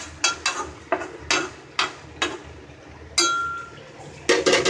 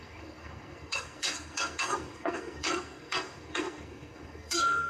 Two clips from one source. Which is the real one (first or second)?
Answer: first